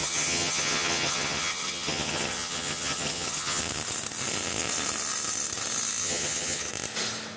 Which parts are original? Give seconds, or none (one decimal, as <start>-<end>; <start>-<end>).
3.6-6.0; 6.7-7.4

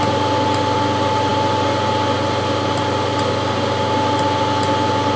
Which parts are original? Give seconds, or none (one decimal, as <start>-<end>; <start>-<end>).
0.0-5.2

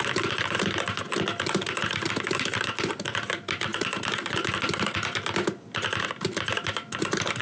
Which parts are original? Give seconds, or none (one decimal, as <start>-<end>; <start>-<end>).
0.0-7.4

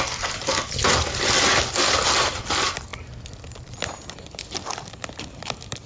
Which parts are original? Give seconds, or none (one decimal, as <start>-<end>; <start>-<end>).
0.0-5.9

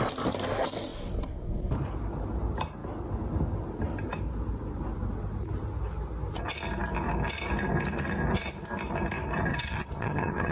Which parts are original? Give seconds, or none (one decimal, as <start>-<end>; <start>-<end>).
0.0-9.5

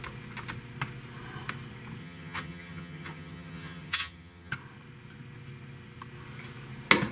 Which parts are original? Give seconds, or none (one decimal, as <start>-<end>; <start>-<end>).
0.0-2.0; 4.5-7.1

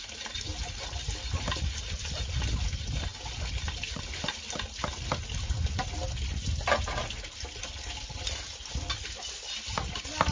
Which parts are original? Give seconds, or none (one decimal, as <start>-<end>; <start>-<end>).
0.0-10.3